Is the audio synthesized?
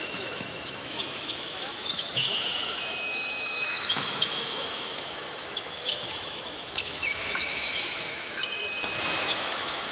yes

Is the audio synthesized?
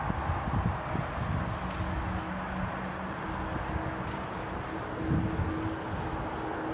no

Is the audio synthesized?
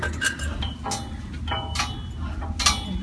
no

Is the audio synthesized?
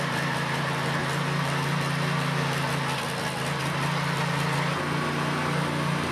no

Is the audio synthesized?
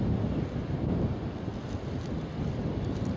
no